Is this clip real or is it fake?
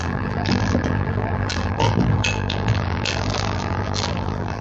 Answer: fake